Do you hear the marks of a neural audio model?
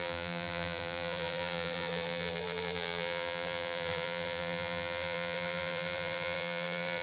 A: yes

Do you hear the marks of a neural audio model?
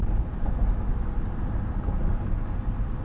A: no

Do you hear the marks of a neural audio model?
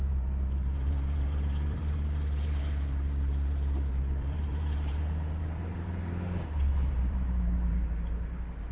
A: yes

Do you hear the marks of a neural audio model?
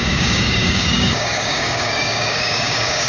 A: yes